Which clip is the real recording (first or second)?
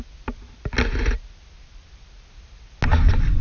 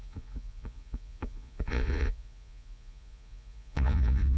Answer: first